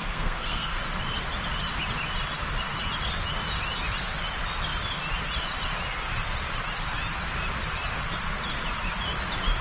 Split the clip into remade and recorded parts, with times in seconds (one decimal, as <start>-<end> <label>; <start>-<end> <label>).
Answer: 0.0-0.8 remade; 0.8-9.6 recorded